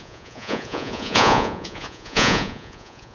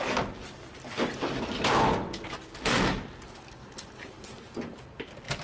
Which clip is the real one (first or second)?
second